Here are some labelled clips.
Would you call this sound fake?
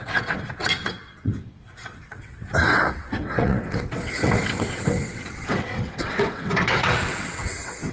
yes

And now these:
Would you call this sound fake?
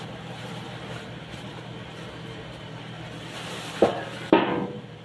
yes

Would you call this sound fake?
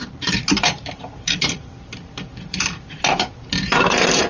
yes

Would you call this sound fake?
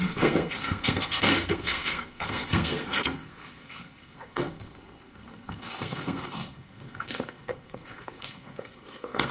yes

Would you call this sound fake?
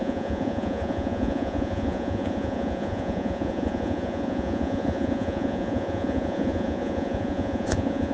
yes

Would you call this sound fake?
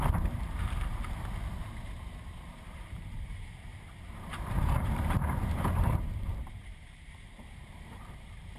yes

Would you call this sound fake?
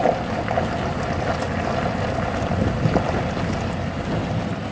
no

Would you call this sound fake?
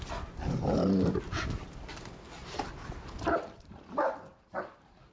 no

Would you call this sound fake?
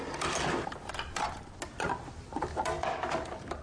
no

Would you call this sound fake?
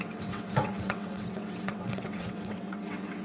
yes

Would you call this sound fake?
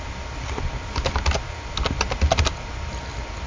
no